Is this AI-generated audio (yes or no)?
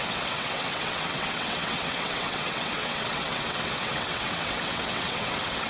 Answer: yes